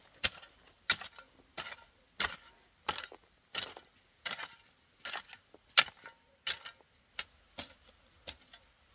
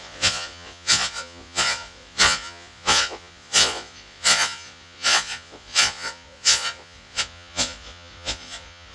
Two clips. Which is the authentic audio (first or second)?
first